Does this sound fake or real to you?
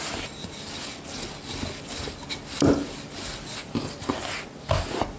real